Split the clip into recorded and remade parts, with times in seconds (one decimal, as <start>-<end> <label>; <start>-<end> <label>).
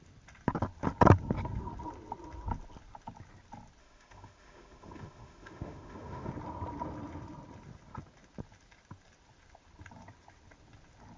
0.0-3.8 recorded; 3.8-6.3 remade; 6.3-11.2 recorded